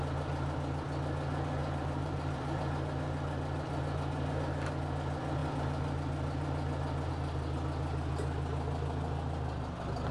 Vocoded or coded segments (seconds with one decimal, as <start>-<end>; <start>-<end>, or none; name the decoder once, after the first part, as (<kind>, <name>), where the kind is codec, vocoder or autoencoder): 1.6-2.6 (vocoder, BigVGAN v2)